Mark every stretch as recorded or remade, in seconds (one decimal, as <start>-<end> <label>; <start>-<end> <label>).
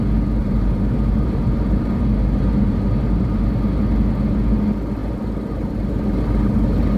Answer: 0.0-0.4 recorded; 0.4-3.8 remade; 3.8-5.0 recorded; 5.0-6.2 remade; 6.2-7.0 recorded